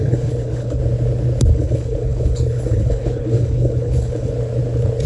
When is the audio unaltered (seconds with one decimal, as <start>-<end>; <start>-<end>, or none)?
0.8-1.5; 4.3-5.1